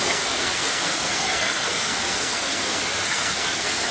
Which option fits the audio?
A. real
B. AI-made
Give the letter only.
B